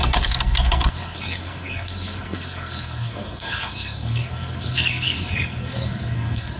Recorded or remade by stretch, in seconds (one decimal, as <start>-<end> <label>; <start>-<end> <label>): 0.0-6.6 remade